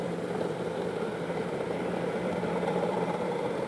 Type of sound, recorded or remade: remade